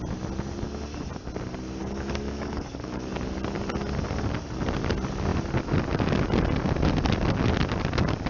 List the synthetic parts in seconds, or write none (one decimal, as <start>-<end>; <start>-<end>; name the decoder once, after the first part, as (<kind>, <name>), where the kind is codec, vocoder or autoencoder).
1.8-3.1 (codec, DAC)